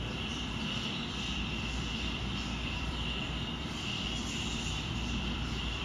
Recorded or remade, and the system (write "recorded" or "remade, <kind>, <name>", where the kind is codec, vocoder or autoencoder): remade, vocoder, BigVGAN v2